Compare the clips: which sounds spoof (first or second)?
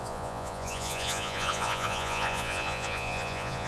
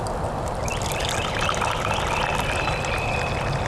first